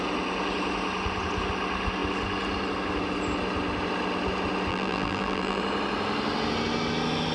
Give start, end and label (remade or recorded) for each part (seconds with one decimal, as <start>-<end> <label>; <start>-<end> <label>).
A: 0.0-4.7 recorded; 4.7-5.6 remade; 5.6-7.3 recorded

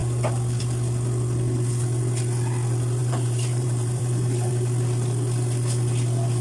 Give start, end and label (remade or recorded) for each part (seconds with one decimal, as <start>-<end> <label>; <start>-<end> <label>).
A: 0.0-3.0 recorded; 3.0-4.5 remade; 4.5-6.4 recorded

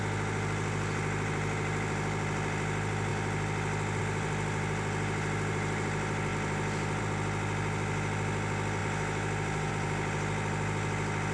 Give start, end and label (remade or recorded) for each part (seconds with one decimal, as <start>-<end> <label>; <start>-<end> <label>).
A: 0.0-11.3 recorded

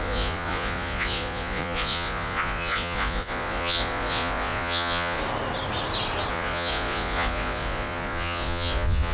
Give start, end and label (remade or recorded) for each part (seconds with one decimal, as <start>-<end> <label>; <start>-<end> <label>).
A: 0.0-5.2 remade; 5.2-6.3 recorded; 6.3-9.1 remade

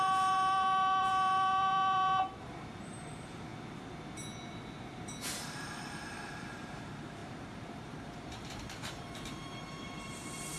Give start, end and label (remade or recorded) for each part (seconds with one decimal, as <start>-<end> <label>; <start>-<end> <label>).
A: 0.0-3.5 remade; 3.5-4.8 recorded; 4.8-10.6 remade